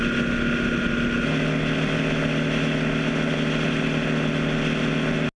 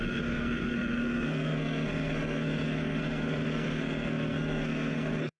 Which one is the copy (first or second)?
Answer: second